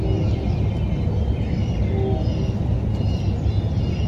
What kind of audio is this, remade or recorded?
recorded